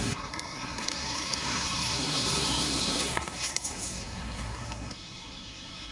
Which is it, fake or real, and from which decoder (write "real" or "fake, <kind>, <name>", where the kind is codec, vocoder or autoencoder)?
fake, codec, SNAC